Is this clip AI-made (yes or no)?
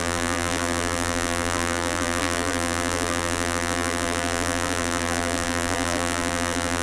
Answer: yes